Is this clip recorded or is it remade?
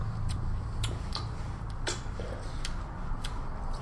recorded